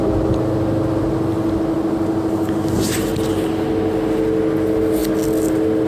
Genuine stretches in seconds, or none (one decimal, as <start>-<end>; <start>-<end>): 0.0-5.9